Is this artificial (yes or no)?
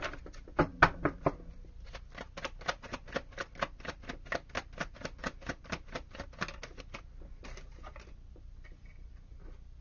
no